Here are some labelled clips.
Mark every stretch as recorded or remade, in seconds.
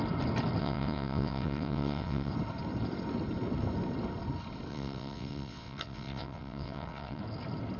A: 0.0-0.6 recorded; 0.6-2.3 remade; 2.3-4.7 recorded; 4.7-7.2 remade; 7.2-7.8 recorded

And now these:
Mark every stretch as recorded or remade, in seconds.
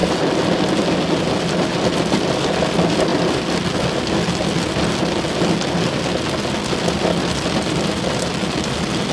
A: 0.0-9.1 recorded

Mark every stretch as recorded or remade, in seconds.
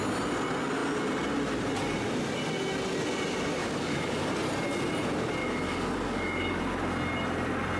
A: 0.0-3.6 recorded; 3.6-4.3 remade; 4.3-5.4 recorded; 5.4-6.6 remade; 6.6-7.8 recorded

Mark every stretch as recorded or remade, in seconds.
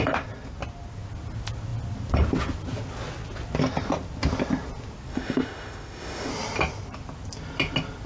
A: 0.0-5.1 recorded; 5.1-6.3 remade; 6.3-8.1 recorded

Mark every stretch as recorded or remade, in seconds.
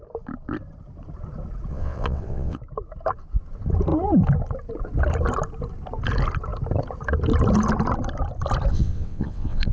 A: 0.0-1.7 recorded; 1.7-2.6 remade; 2.6-8.7 recorded; 8.7-9.7 remade